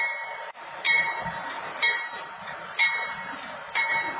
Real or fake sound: fake